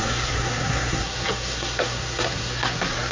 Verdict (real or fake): fake